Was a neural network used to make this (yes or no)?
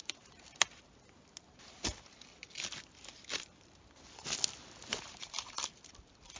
no